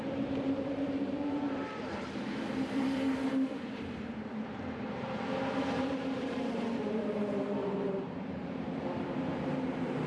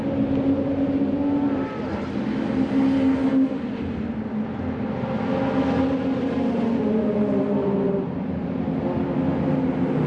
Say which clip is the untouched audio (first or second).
second